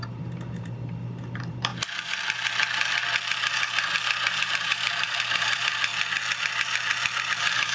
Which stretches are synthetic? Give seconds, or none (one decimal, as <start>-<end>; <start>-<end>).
0.0-1.7; 4.5-5.9; 7.2-7.7